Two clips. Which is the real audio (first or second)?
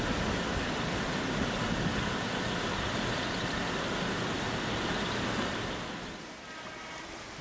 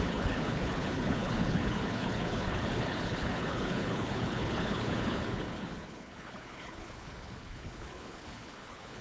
first